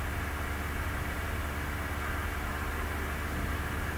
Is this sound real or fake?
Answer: real